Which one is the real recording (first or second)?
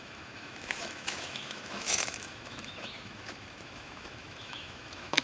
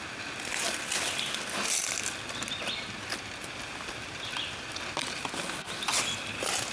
second